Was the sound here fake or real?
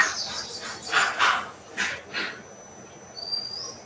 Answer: real